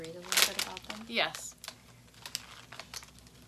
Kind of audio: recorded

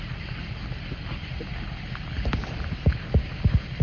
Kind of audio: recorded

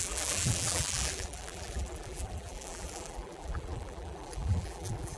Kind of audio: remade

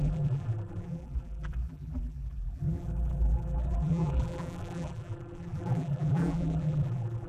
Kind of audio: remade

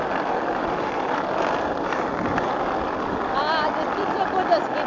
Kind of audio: recorded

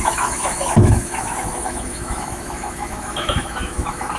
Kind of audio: remade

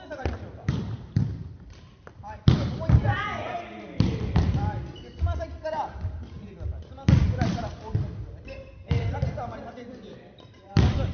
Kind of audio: remade